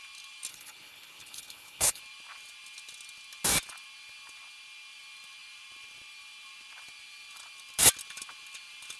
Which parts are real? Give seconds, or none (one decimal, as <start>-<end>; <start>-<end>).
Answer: 0.0-0.5; 2.0-9.0